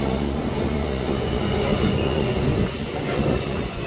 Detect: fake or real fake